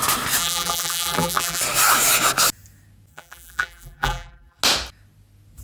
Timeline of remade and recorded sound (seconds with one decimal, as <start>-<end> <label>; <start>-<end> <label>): 0.0-0.4 recorded; 0.4-1.6 remade; 1.6-3.1 recorded; 3.1-4.6 remade; 4.6-5.6 recorded